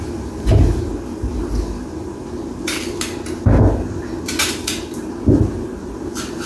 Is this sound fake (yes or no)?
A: no